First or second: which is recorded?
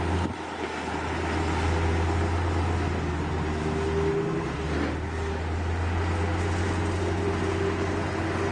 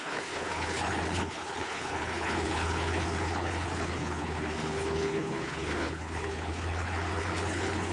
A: first